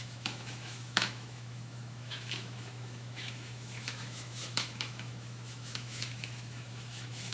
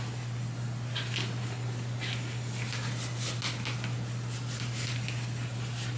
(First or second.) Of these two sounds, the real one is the second